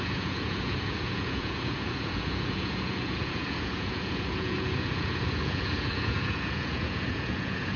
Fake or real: fake